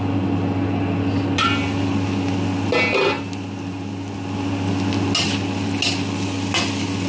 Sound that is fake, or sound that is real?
real